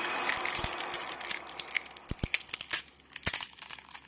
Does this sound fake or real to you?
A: real